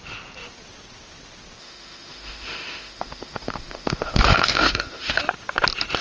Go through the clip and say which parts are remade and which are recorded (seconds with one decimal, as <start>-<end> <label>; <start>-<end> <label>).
0.0-1.6 recorded; 1.6-5.2 remade; 5.2-6.0 recorded